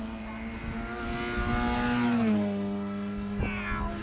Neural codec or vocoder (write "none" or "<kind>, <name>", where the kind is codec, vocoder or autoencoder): none